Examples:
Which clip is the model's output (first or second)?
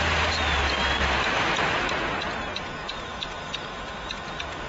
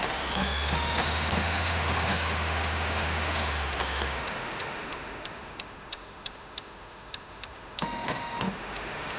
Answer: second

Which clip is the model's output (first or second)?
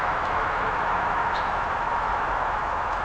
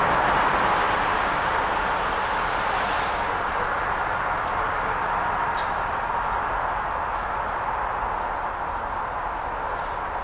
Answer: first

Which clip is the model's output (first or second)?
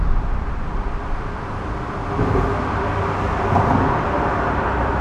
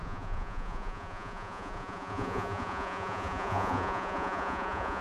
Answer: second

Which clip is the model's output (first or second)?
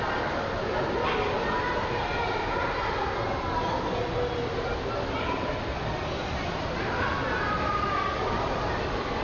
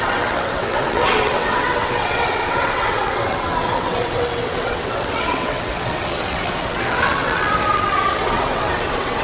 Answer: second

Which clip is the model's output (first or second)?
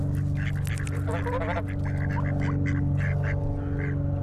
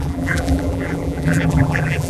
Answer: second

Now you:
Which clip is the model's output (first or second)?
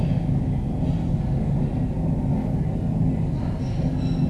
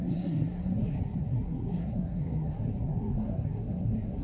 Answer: second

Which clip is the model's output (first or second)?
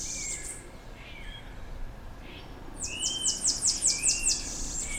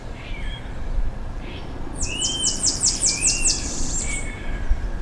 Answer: second